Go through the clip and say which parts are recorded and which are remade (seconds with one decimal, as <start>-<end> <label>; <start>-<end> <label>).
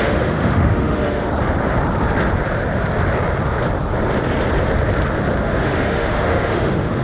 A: 0.0-1.3 remade; 1.3-5.4 recorded; 5.4-7.0 remade